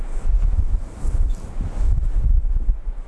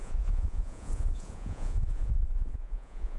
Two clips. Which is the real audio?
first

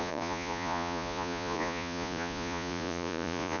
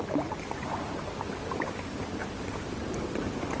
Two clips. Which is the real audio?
second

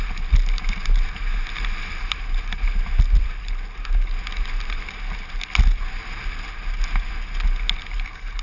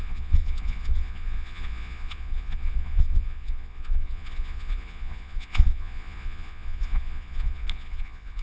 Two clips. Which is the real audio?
first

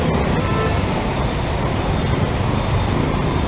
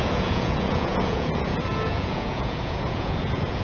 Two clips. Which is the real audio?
first